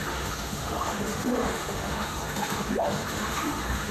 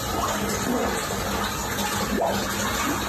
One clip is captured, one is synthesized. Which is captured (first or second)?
second